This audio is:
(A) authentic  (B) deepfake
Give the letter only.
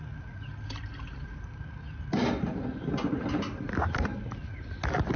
A